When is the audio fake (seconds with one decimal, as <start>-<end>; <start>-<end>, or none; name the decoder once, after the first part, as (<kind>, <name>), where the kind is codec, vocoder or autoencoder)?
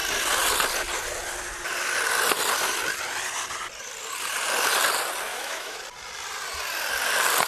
5.3-5.8 (autoencoder, DAC-VAE)